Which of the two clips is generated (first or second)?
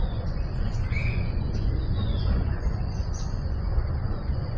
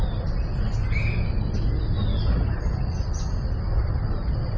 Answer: first